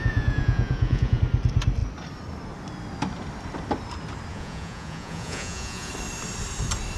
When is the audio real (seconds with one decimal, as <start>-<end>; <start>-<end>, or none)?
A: 1.2-4.3; 5.9-7.0